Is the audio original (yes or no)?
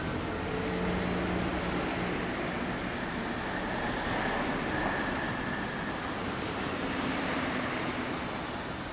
yes